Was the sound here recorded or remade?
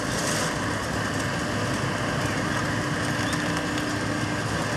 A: recorded